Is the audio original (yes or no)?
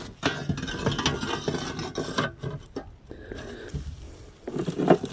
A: yes